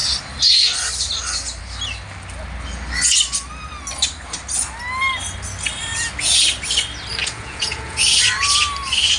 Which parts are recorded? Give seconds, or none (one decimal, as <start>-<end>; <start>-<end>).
0.0-7.2; 8.0-9.2